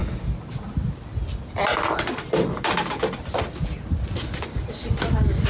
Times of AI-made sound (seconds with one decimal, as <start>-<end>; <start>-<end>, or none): none